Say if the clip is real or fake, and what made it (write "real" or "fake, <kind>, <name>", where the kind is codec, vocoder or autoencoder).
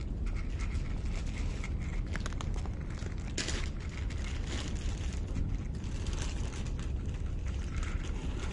real